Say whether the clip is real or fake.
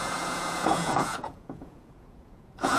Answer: fake